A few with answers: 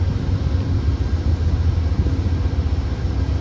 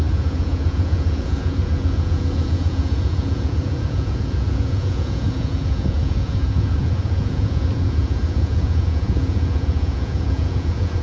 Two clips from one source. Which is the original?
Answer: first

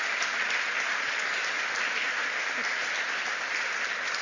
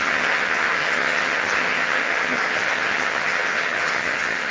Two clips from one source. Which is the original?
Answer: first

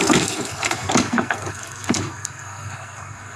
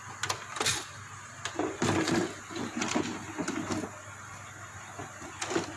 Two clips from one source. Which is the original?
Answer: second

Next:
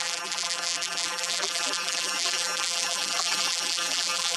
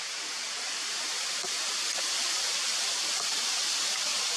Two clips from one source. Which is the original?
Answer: second